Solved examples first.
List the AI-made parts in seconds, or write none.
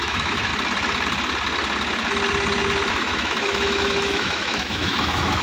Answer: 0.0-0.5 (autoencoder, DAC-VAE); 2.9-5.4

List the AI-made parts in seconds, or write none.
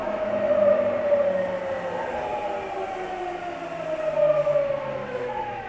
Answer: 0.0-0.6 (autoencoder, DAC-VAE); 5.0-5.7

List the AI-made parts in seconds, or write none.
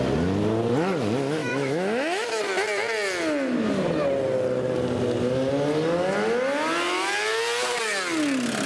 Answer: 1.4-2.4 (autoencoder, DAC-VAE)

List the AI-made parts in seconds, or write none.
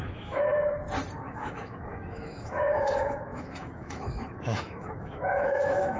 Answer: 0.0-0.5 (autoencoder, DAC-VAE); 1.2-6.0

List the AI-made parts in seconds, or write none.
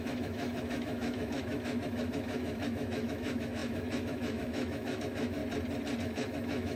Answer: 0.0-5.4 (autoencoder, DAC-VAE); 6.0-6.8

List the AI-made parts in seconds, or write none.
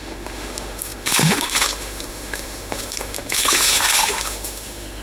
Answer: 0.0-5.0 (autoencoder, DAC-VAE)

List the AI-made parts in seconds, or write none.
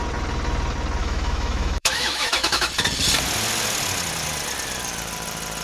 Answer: 1.0-2.7 (autoencoder, DAC-VAE)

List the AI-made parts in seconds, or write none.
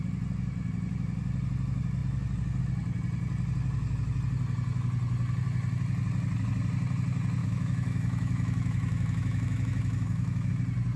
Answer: 7.4-10.5 (autoencoder, DAC-VAE)